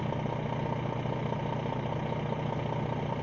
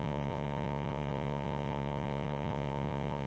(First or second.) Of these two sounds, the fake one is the second